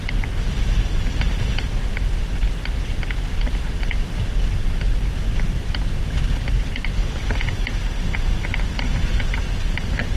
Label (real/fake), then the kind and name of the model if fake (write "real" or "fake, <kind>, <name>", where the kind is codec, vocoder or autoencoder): real